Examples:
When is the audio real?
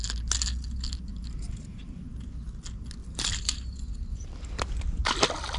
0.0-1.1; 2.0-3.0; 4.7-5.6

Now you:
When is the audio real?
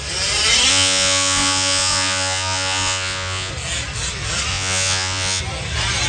0.0-0.7; 3.5-4.5; 5.4-6.1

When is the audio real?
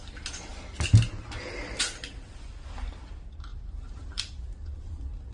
0.0-3.5; 4.2-5.3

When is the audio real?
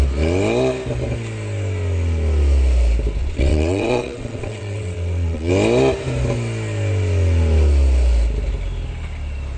0.0-3.2; 5.5-9.6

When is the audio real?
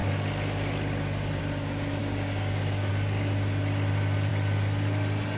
0.0-2.0; 2.9-5.4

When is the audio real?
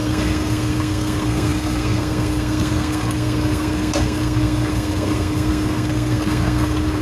none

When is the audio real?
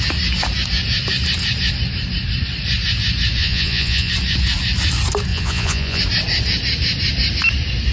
0.0-3.4; 4.1-5.3; 6.0-7.9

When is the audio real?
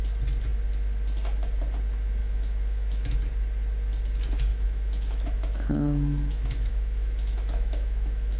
0.0-2.2; 3.2-4.5